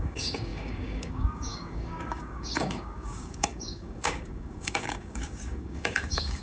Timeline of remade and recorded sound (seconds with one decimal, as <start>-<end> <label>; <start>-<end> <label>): 0.0-6.4 remade